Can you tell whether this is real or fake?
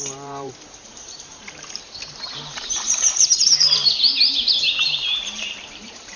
fake